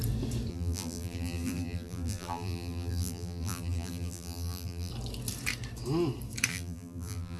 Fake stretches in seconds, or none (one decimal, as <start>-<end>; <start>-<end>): 0.5-4.9; 6.5-7.4